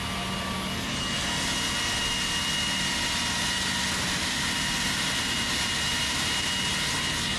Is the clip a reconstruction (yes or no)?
no